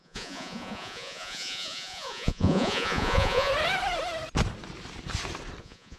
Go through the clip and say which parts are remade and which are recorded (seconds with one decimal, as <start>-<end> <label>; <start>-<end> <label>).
0.0-3.5 remade; 3.5-5.6 recorded; 5.6-6.0 remade